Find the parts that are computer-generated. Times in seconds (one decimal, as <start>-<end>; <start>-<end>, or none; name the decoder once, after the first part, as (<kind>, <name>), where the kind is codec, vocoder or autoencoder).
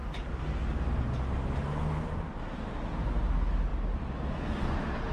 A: none